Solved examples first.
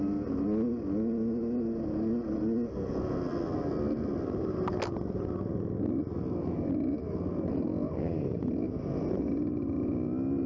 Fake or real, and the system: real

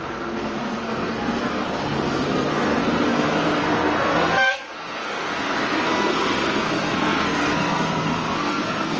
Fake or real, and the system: fake, codec, SNAC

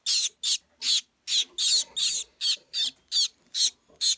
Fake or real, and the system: real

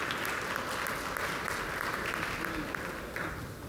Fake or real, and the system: real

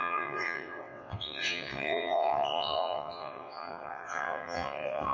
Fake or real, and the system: fake, vocoder, WaveNeXt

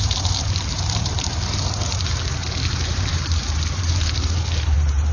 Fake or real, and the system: fake, vocoder, BigVGAN v2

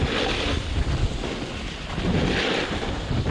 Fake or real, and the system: real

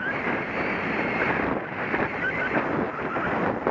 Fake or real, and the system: real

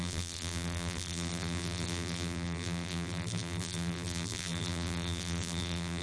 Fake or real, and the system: fake, vocoder, BigVGAN v2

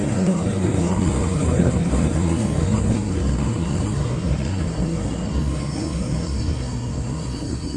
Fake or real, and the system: fake, codec, SNAC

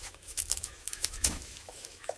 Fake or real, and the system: fake, autoencoder, DAC-VAE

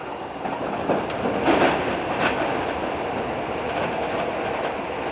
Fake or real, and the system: real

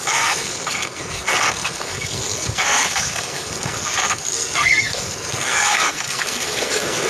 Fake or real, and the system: fake, codec, SNAC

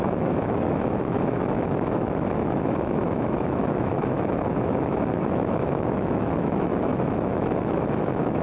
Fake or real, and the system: fake, autoencoder, DAC-VAE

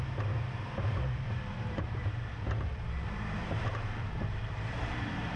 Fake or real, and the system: fake, vocoder, BigVGAN v2